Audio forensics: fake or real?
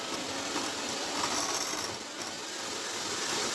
real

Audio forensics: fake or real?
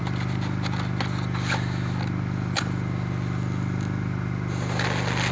real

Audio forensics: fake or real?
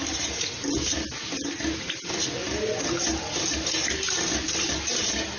real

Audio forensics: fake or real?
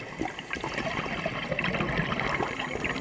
real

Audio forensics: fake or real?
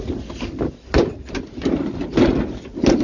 real